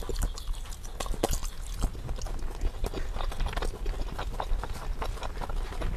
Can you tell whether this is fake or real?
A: real